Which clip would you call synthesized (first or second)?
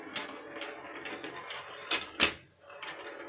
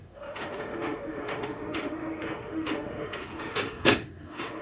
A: second